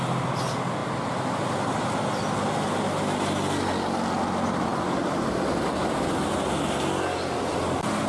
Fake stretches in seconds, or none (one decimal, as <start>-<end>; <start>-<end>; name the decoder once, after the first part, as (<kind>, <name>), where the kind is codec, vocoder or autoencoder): none